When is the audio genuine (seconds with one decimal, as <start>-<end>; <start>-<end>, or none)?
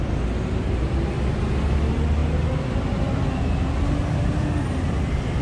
0.0-5.4